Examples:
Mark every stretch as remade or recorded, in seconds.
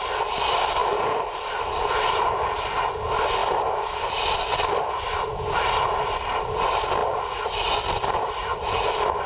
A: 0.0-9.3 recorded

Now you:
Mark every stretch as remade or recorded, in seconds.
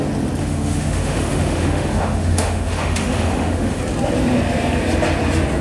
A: 0.0-0.4 recorded; 0.4-3.8 remade; 3.8-5.6 recorded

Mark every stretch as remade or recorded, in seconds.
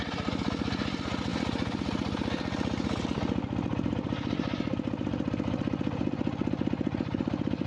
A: 0.0-7.7 recorded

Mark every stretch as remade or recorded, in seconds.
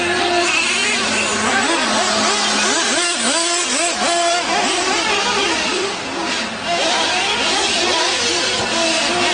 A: 0.0-0.8 recorded; 0.8-1.5 remade; 1.5-9.3 recorded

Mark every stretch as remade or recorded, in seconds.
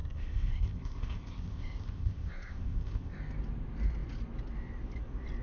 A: 0.0-3.2 remade; 3.2-5.4 recorded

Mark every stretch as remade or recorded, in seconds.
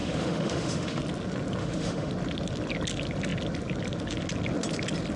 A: 0.0-1.0 remade; 1.0-1.6 recorded; 1.6-2.1 remade; 2.1-5.2 recorded